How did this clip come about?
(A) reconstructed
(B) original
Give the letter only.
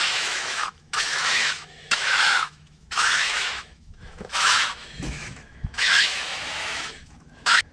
A